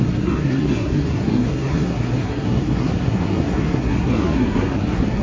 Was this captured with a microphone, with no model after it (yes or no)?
no